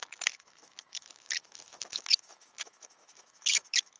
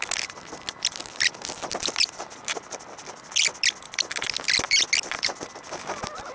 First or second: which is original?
second